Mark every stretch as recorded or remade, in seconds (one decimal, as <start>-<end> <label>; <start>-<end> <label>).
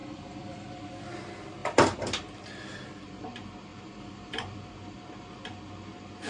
0.0-0.8 remade; 0.8-1.6 recorded; 1.6-2.3 remade; 2.3-3.7 recorded; 3.7-4.7 remade; 4.7-6.3 recorded